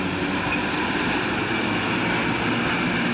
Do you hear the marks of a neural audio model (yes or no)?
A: no